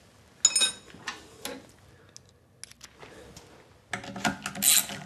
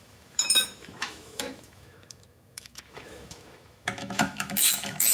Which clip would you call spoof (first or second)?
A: second